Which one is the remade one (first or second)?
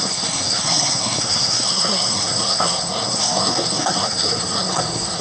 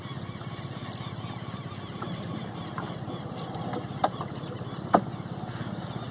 first